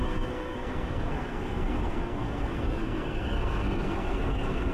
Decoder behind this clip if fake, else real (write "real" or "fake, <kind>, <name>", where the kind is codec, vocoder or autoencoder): fake, codec, SNAC